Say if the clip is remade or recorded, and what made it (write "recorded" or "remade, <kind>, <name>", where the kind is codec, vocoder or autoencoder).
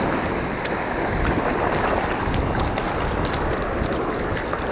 recorded